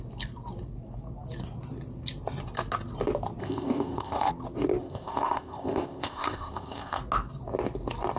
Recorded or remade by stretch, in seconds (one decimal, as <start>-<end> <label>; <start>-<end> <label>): 0.0-3.4 recorded; 3.4-4.3 remade; 4.3-4.8 recorded; 4.8-7.0 remade; 7.0-8.2 recorded